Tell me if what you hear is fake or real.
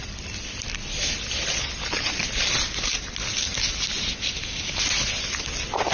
real